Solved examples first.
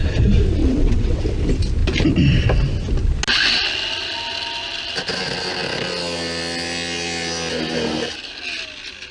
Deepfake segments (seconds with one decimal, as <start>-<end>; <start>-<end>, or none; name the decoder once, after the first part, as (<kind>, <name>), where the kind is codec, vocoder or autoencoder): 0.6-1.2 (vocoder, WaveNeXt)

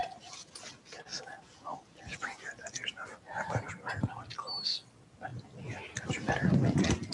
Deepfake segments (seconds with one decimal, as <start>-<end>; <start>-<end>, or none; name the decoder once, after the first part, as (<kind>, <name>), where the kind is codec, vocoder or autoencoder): none

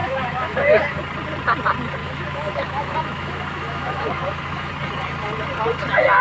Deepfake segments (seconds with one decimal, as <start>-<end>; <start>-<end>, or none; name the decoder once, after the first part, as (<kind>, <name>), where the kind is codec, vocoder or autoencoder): 0.0-1.0 (autoencoder, DAC-VAE); 2.0-4.7

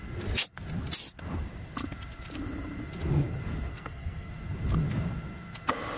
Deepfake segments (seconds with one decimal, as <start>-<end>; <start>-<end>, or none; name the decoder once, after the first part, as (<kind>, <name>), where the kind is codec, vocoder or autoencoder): 3.7-4.3 (codec, SNAC)

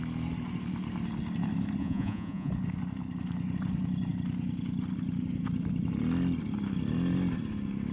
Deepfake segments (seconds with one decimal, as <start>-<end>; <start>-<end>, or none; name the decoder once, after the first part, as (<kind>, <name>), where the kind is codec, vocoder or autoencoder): 1.8-2.5 (vocoder, Vocos)

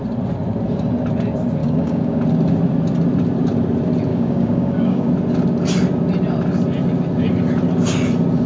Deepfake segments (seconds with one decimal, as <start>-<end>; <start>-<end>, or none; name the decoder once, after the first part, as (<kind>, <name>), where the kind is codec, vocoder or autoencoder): 1.6-2.2 (codec, DAC); 4.1-5.1